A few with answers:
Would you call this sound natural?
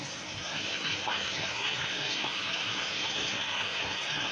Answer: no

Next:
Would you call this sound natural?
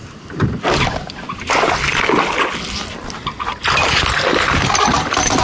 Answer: yes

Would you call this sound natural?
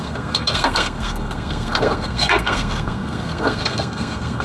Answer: no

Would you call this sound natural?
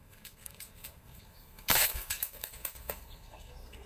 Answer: no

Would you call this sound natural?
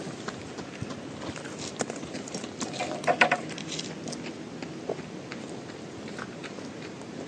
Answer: yes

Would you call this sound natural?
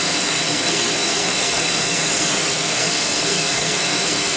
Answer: no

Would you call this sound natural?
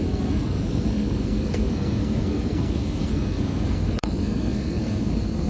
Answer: no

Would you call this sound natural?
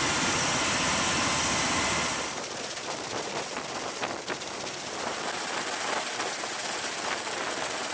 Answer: yes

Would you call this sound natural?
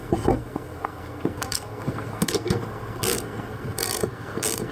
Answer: no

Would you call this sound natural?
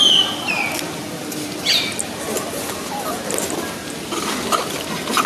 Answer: yes